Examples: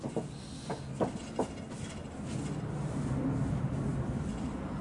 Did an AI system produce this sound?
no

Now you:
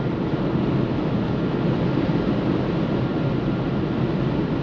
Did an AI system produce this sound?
no